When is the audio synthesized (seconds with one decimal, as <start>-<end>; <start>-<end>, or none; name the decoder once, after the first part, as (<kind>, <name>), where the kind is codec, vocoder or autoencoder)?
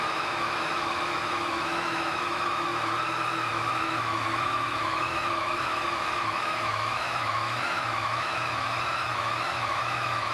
0.0-2.7 (autoencoder, DAC-VAE); 3.5-10.3